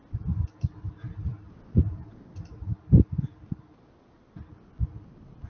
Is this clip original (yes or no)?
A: yes